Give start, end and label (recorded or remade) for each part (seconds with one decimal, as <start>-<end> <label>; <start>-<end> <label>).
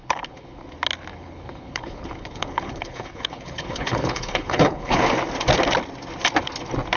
0.0-0.6 remade; 0.6-1.1 recorded; 1.1-5.0 remade; 5.0-7.0 recorded